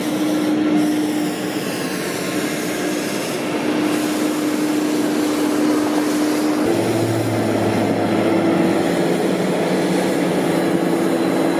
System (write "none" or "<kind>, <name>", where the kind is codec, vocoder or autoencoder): none